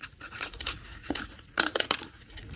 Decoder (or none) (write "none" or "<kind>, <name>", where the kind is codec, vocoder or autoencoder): vocoder, Vocos